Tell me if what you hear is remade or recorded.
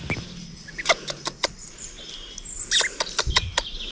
recorded